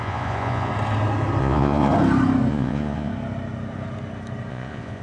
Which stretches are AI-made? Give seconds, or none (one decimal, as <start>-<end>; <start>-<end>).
0.0-0.7; 1.4-1.9; 2.5-3.1; 4.5-5.0